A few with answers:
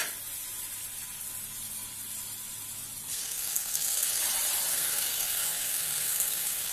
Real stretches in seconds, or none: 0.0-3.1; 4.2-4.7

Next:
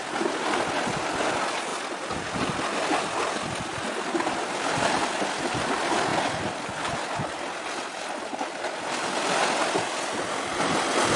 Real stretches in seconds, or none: 0.0-11.2